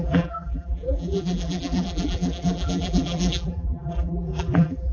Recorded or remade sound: remade